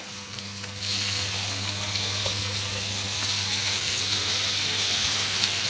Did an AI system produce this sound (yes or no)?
yes